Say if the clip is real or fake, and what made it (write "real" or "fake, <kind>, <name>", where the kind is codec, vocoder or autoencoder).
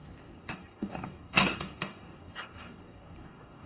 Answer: fake, codec, DAC